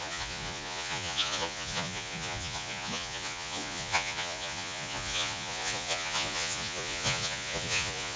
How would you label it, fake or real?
fake